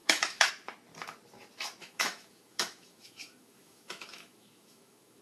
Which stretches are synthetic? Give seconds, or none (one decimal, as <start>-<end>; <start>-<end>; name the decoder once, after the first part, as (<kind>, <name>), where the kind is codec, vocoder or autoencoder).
0.0-0.5 (autoencoder, DAC-VAE); 1.8-5.2